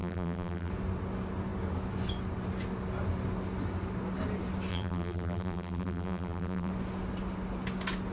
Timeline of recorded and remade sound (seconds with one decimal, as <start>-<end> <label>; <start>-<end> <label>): 0.0-0.7 remade; 0.7-4.7 recorded; 4.7-6.7 remade; 6.7-8.1 recorded